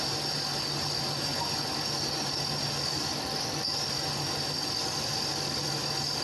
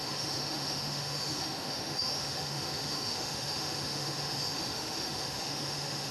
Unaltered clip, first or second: first